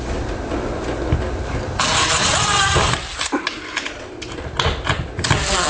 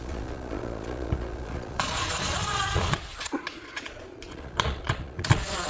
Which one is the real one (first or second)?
first